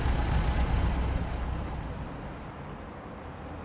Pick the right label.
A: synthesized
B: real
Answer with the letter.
B